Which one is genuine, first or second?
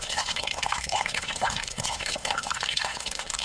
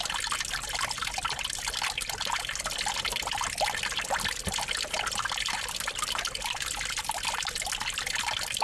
second